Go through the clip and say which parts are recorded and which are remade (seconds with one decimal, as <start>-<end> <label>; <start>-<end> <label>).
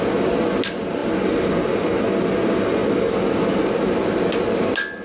0.0-5.0 recorded